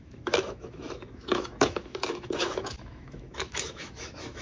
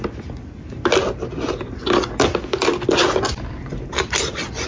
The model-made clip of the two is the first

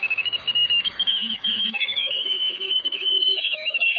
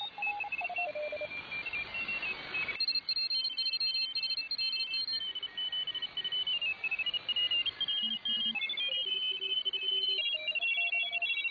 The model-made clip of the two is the first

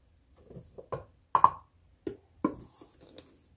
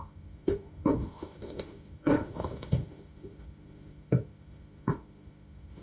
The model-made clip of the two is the second